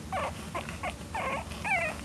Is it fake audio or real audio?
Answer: real